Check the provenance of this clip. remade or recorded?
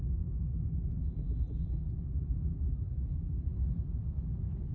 recorded